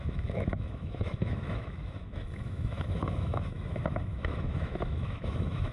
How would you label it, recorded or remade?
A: remade